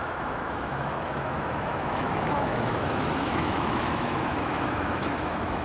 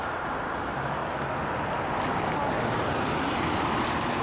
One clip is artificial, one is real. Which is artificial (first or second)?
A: first